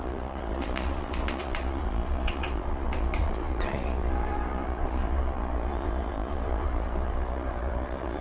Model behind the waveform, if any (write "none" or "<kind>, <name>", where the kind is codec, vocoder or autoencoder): vocoder, Vocos